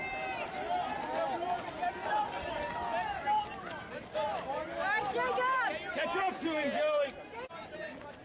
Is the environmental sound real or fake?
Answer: real